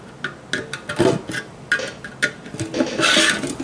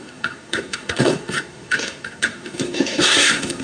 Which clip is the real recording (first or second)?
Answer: first